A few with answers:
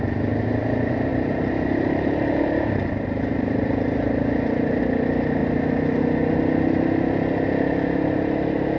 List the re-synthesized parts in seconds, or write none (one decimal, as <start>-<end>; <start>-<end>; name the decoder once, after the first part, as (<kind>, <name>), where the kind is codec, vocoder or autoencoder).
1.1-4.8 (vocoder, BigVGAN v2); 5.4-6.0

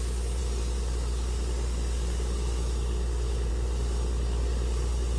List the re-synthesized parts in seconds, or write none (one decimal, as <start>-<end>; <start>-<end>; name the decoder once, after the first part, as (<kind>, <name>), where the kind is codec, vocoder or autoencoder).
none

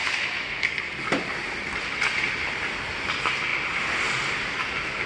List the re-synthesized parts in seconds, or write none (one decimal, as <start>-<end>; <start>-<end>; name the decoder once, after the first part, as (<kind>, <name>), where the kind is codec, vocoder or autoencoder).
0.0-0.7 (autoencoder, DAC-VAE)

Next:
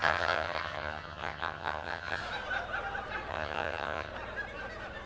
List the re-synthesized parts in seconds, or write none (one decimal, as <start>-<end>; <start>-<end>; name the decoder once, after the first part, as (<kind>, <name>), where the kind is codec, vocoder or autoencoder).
0.0-2.2 (vocoder, HiFi-GAN); 3.3-4.1

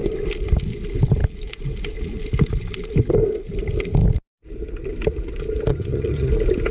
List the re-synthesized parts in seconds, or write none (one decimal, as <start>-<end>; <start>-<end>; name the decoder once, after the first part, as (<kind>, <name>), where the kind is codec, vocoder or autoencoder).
5.7-6.3 (vocoder, HiFi-GAN)

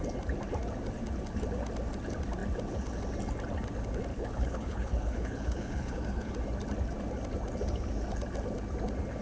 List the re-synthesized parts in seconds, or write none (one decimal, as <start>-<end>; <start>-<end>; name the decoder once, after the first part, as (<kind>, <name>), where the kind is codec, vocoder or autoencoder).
4.1-6.3 (codec, HILCodec)